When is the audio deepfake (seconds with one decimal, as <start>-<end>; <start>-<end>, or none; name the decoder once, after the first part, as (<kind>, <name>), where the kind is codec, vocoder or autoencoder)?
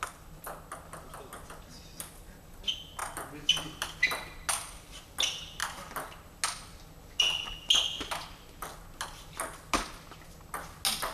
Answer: none